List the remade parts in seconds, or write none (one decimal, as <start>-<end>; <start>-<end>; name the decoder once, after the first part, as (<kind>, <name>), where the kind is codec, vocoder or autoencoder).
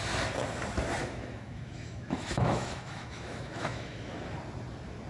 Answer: 1.0-4.1 (autoencoder, DAC-VAE)